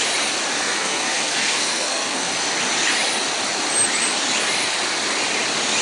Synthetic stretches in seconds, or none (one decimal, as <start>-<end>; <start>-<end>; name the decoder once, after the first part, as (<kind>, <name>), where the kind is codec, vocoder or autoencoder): 0.6-2.3 (codec, SNAC)